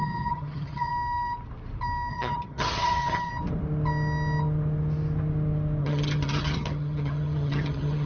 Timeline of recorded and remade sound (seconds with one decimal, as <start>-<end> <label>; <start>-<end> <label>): 0.0-0.9 remade; 0.9-2.1 recorded; 2.1-3.3 remade; 3.3-5.8 recorded; 5.8-8.1 remade